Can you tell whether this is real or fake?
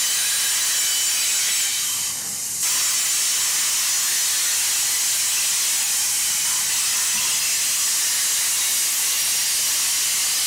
real